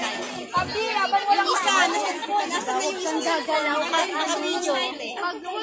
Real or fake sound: real